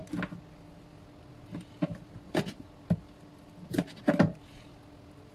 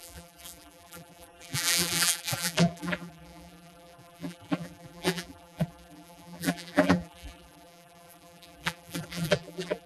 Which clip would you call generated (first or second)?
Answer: second